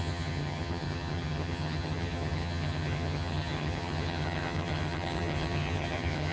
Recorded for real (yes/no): no